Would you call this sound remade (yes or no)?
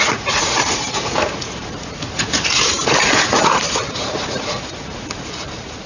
yes